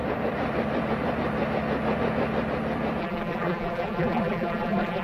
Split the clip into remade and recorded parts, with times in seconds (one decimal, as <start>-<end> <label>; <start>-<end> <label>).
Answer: 0.0-3.0 recorded; 3.0-5.0 remade